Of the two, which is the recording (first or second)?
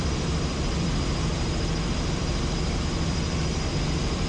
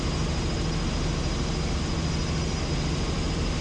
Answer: second